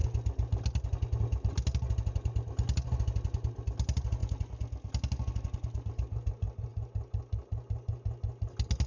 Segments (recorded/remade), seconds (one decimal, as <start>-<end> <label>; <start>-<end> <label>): 0.0-8.9 recorded